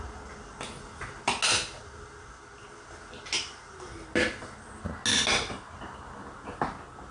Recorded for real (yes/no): yes